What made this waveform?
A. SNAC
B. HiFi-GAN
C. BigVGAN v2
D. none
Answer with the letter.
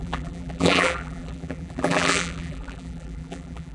C